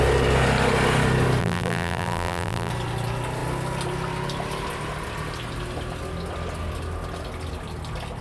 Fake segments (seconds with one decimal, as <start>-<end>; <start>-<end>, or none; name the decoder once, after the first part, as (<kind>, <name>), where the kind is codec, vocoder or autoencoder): 1.4-2.7 (vocoder, BigVGAN v2)